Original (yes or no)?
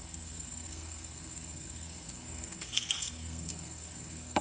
no